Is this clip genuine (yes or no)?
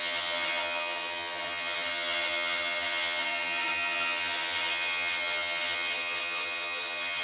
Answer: no